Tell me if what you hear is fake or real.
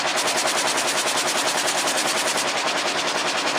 real